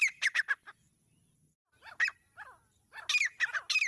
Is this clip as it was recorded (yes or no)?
yes